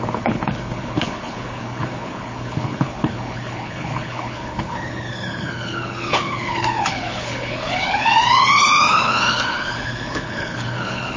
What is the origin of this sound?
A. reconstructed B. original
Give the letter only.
A